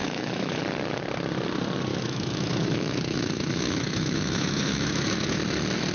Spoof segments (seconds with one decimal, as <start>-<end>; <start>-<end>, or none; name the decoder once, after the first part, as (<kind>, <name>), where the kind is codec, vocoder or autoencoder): 0.0-0.6 (autoencoder, DAC-VAE); 1.9-5.4